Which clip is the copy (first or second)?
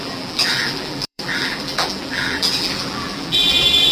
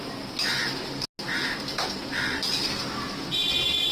first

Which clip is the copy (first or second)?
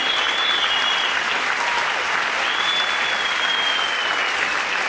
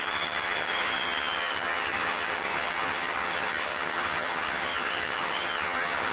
second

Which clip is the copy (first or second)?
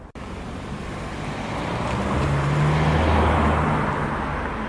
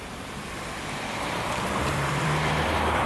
second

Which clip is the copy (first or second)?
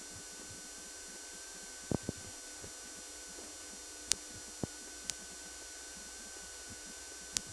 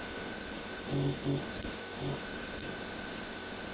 second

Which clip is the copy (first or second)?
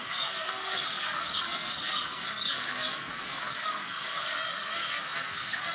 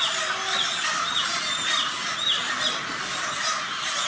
first